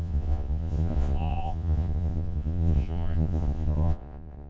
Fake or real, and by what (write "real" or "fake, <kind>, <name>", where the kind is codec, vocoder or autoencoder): fake, vocoder, Vocos